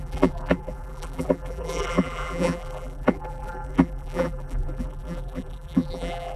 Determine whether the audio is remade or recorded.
remade